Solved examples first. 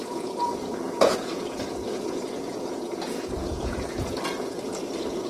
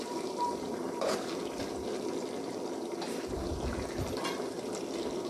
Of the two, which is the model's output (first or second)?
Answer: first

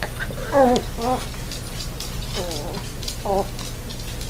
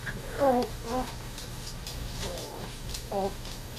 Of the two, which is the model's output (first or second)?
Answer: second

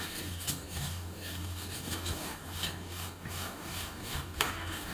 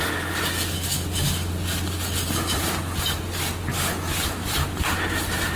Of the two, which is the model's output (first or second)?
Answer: first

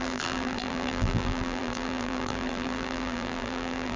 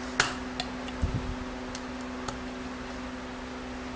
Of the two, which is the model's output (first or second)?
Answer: first